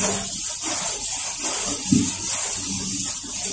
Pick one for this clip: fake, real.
real